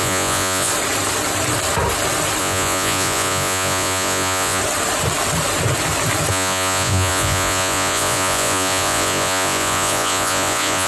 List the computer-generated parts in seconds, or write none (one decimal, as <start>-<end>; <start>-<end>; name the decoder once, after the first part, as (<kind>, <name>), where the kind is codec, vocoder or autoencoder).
0.0-0.7 (vocoder, Vocos); 2.4-4.6; 6.3-10.9